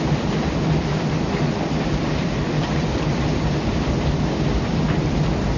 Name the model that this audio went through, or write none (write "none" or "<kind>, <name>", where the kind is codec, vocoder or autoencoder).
vocoder, BigVGAN v2